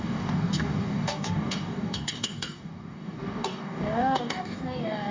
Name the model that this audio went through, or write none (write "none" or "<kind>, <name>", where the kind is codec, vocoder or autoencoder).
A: codec, DAC